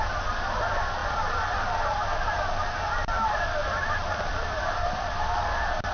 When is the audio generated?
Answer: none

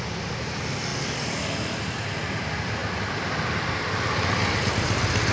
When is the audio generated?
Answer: none